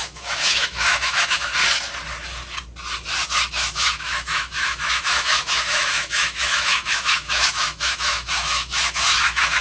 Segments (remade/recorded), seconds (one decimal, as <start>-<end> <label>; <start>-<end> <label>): 0.0-1.5 remade; 1.5-3.5 recorded; 3.5-9.6 remade